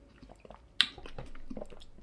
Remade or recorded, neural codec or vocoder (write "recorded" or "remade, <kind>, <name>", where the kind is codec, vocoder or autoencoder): recorded